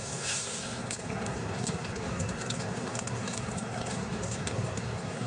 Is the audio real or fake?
fake